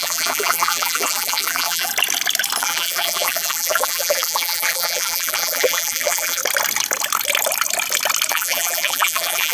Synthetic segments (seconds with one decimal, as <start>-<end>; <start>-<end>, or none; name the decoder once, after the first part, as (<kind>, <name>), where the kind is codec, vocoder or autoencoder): 0.0-1.9 (vocoder, BigVGAN v2); 2.6-6.4; 8.3-9.5